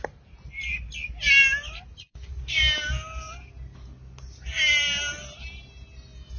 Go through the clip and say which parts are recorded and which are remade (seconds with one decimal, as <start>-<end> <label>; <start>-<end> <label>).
0.0-6.4 recorded